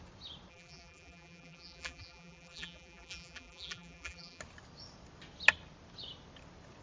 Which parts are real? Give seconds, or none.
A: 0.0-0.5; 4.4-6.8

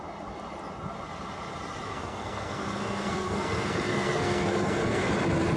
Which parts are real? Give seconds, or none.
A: 0.0-1.9; 5.1-5.6

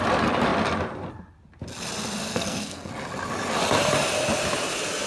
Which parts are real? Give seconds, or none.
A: 0.0-2.3; 2.9-5.1

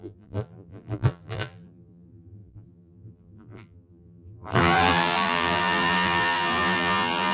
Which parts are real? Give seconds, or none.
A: none